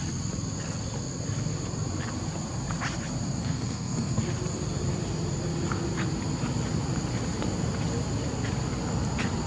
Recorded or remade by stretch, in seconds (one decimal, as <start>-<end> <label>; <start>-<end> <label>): 0.0-3.4 recorded; 3.4-4.2 remade; 4.2-9.5 recorded